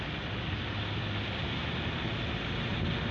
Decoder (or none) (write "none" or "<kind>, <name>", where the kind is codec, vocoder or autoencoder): none